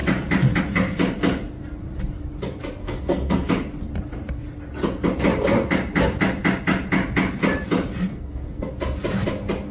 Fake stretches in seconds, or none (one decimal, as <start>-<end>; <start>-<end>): 2.8-3.5; 8.1-8.7